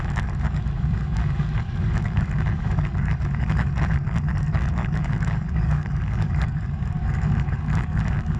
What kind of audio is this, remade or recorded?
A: remade